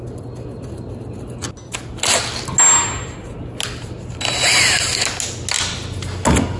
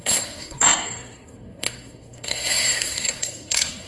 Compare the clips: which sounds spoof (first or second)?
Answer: second